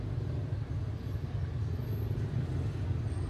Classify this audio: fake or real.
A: real